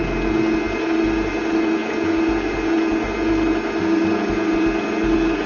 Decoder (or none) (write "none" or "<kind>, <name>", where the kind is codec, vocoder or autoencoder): none